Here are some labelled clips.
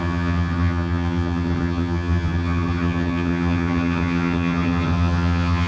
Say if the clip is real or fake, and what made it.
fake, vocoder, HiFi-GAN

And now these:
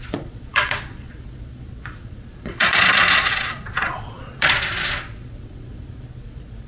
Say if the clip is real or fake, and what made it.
fake, vocoder, Vocos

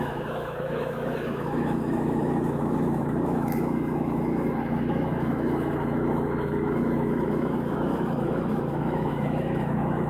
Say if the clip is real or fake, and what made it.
fake, autoencoder, DAC-VAE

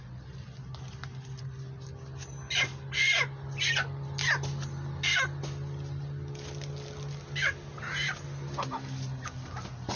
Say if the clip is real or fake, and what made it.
real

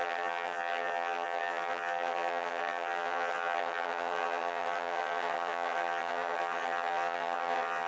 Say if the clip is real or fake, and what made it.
fake, vocoder, HiFi-GAN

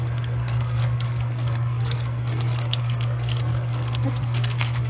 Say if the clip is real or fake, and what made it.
fake, codec, SNAC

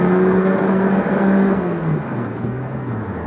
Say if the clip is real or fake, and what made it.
fake, codec, SNAC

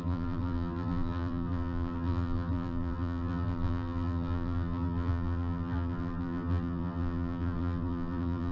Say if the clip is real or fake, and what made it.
fake, vocoder, BigVGAN v2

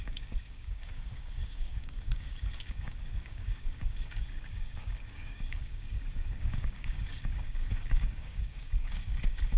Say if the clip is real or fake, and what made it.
fake, codec, DAC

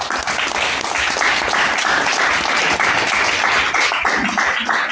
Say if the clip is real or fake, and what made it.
real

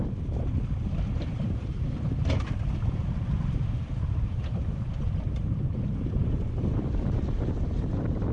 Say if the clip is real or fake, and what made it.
fake, vocoder, BigVGAN v2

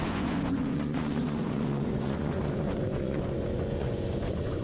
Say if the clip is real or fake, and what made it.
fake, vocoder, Vocos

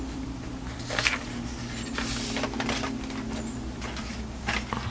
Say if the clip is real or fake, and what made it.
real